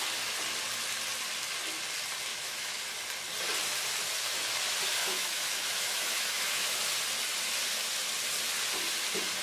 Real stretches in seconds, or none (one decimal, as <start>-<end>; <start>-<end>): 0.0-2.3; 2.8-5.0; 6.8-9.4